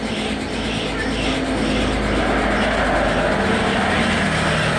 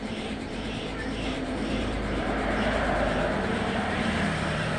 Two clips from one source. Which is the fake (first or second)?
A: second